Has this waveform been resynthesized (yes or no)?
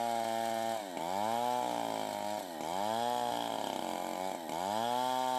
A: no